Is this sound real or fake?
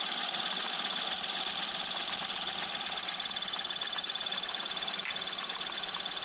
real